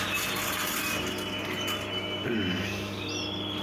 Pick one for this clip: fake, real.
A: real